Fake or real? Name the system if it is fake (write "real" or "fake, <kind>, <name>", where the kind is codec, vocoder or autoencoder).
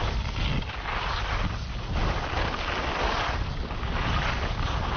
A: real